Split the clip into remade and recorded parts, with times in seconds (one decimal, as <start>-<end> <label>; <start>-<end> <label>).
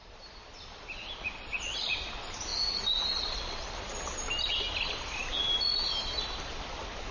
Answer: 0.0-7.1 recorded